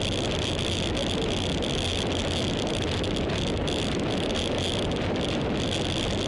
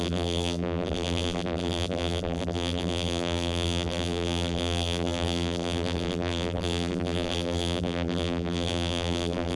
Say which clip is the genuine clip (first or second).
first